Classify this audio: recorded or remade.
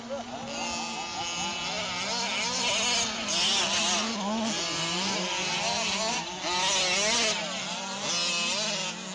recorded